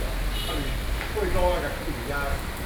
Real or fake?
real